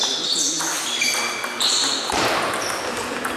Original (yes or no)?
yes